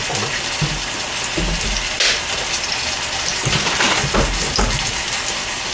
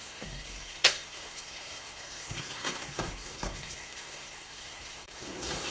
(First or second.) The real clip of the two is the first